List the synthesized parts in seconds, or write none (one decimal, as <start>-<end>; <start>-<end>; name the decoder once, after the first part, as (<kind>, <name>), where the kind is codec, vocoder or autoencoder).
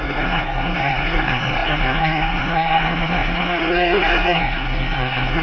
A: 0.0-5.4 (codec, SNAC)